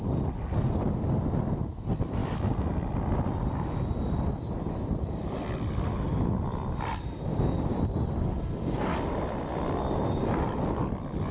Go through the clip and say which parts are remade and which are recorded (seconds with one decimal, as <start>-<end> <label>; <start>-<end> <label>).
0.0-11.3 recorded